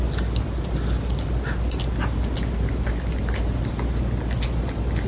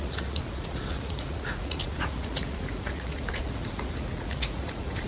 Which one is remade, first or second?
second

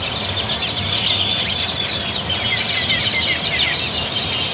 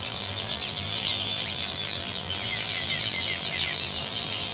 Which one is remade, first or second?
second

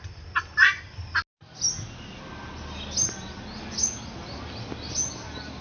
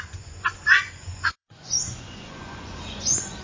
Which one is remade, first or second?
second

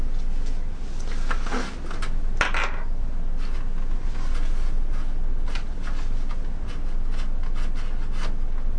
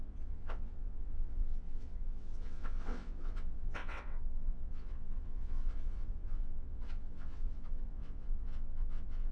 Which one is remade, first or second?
second